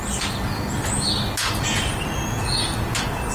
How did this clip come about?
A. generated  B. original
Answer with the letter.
B